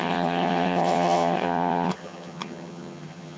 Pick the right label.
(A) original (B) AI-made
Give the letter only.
B